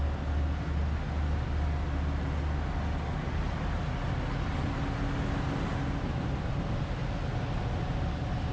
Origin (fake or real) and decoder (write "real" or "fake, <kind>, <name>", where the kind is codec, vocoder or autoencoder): real